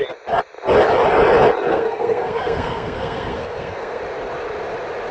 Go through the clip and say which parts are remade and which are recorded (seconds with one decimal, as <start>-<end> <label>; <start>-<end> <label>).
0.0-1.7 recorded; 1.7-4.0 remade; 4.0-5.1 recorded